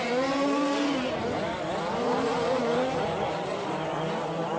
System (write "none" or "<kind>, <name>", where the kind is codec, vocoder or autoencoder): none